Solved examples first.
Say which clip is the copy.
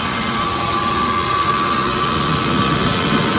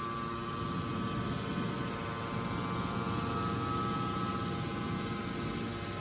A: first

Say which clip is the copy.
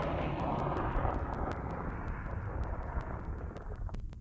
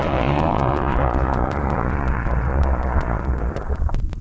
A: second